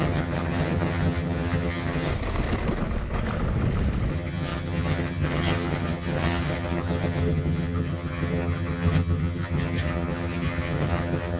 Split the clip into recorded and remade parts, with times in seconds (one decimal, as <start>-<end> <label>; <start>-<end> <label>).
0.0-2.1 remade; 2.1-4.1 recorded; 4.1-11.4 remade